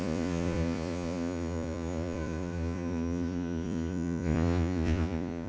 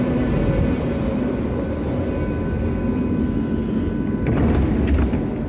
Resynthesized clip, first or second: first